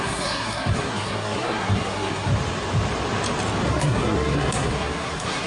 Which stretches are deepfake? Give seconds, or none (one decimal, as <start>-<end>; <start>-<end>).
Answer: 0.0-2.3; 3.7-5.5